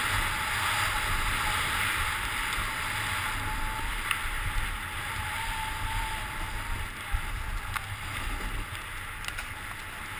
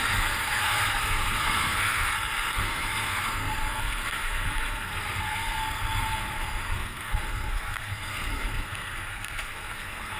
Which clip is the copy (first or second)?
second